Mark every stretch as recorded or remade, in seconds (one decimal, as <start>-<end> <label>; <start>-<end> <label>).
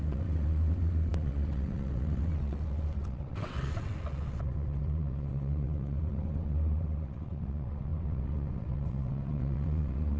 0.0-10.2 remade